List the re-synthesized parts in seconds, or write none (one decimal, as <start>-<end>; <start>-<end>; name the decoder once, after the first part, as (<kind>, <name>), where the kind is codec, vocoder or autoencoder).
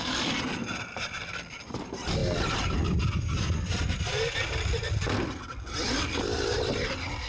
0.6-1.2 (vocoder, BigVGAN v2)